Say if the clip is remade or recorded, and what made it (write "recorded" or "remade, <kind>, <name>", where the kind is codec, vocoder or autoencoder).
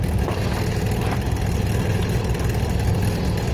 recorded